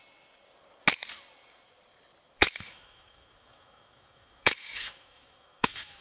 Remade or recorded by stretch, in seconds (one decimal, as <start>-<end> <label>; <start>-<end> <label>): 0.0-2.4 recorded; 2.4-6.0 remade